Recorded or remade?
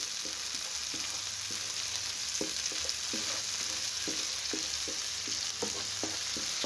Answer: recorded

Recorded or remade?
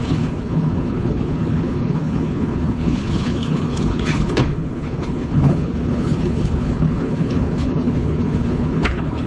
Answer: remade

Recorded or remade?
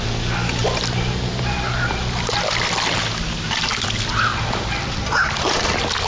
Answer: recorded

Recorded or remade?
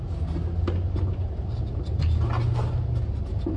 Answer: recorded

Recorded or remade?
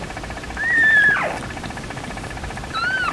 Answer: recorded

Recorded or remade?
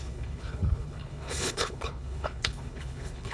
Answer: remade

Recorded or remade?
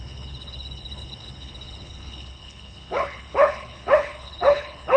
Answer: remade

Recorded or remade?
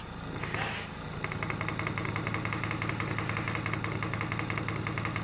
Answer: recorded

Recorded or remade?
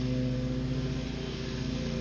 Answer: recorded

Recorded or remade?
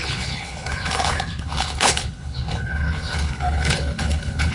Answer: remade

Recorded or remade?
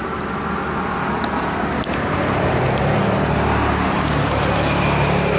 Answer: recorded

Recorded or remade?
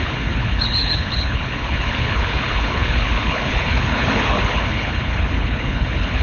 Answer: remade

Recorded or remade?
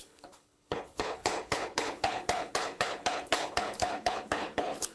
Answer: remade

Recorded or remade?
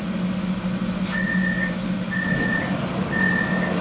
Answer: recorded